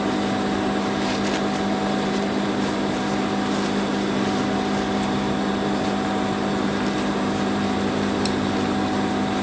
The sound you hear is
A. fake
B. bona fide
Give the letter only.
B